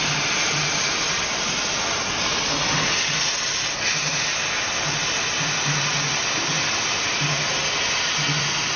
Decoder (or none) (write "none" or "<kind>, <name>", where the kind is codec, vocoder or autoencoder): none